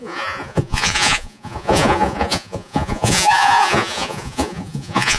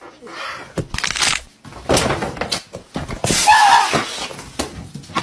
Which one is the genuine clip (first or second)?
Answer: second